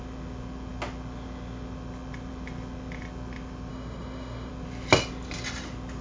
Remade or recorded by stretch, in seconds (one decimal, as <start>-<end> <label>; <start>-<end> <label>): 0.0-3.7 recorded; 3.7-4.5 remade; 4.5-6.0 recorded